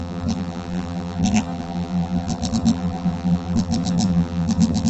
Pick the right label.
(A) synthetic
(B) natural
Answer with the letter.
A